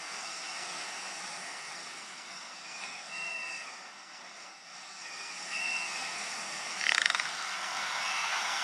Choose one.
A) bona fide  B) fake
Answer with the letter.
B